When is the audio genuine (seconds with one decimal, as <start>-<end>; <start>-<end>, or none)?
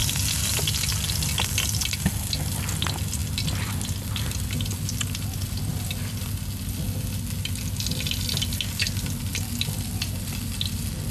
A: 0.0-11.1